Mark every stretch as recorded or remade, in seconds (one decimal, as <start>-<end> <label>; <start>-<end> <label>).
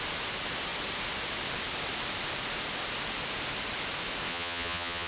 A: 0.0-4.3 recorded; 4.3-5.1 remade